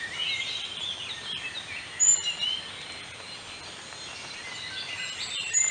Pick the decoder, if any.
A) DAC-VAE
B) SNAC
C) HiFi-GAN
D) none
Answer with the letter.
D